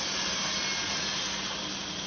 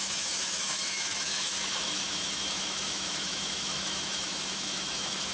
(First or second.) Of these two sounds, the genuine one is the first